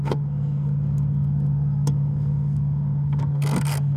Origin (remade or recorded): remade